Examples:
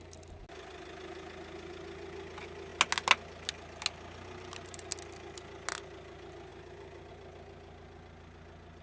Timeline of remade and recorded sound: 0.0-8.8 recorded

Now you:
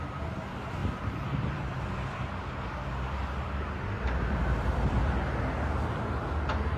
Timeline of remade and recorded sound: 0.0-0.8 recorded; 0.8-4.9 remade; 4.9-6.8 recorded